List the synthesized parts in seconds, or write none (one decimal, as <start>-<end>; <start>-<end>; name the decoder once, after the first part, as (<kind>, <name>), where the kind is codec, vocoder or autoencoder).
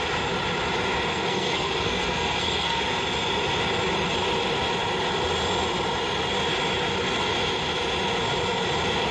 1.1-2.8 (codec, SNAC)